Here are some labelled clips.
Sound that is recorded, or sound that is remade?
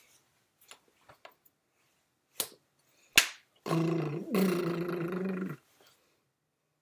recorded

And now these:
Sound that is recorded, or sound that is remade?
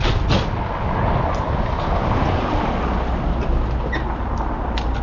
recorded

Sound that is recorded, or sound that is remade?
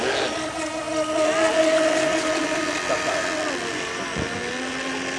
recorded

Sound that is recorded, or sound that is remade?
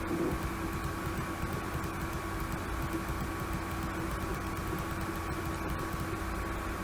recorded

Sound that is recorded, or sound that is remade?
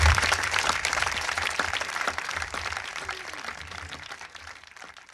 remade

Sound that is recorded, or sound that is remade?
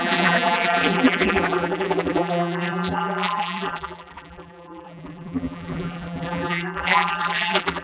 remade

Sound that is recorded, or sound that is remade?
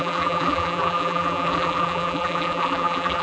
remade